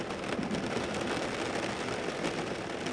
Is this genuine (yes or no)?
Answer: yes